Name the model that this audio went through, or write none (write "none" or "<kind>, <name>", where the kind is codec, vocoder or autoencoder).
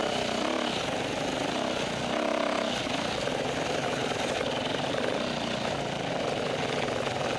none